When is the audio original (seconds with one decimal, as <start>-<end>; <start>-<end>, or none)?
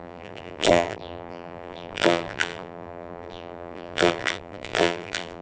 none